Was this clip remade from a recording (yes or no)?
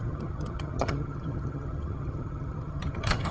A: yes